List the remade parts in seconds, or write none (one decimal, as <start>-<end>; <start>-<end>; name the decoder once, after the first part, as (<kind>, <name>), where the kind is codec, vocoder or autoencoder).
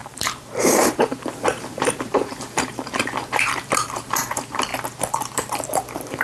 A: 0.0-4.7 (vocoder, BigVGAN v2); 5.2-6.2